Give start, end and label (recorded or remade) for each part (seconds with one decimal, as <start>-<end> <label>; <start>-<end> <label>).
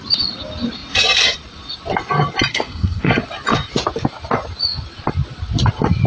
0.0-2.5 recorded; 2.5-3.1 remade; 3.1-6.1 recorded